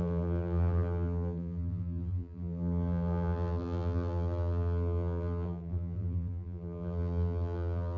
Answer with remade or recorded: remade